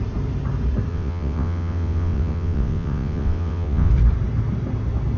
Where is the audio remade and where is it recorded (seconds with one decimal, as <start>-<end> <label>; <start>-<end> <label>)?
0.0-0.9 recorded; 0.9-3.9 remade; 3.9-5.2 recorded